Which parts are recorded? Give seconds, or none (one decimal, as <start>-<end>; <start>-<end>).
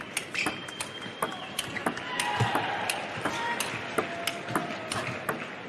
0.0-5.7